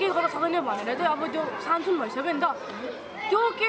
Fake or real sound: real